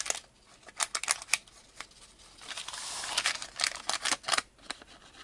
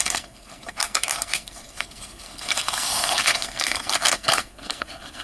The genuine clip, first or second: first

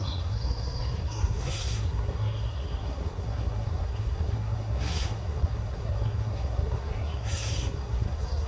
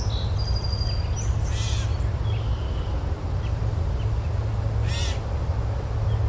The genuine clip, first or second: second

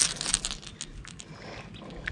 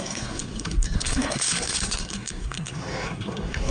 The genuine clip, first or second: first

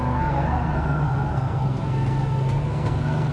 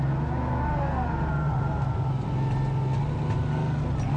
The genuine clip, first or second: second